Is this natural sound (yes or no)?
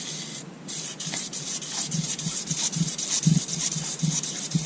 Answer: yes